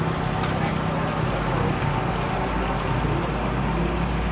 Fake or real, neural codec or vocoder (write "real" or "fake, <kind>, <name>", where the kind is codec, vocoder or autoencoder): real